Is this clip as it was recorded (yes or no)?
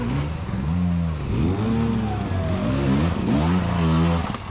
yes